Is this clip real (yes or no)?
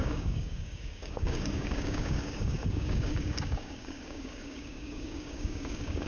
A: no